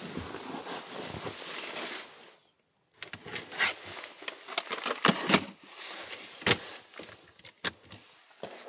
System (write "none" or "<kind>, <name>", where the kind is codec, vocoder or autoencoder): none